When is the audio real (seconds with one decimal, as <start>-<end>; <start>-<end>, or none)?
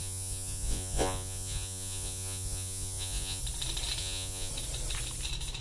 3.4-4.0; 4.5-5.6